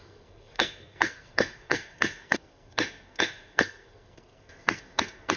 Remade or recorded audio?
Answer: remade